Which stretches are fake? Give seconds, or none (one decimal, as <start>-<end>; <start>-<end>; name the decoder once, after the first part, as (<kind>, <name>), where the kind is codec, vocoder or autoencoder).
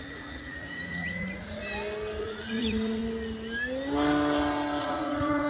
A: 0.0-1.6 (vocoder, Vocos); 2.2-3.0; 4.8-5.5